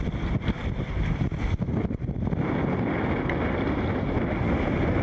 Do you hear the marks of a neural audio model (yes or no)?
no